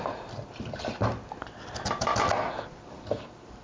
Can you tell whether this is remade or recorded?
recorded